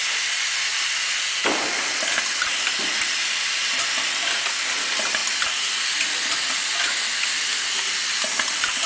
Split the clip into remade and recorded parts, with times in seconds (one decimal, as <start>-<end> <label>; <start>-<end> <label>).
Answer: 0.0-8.9 recorded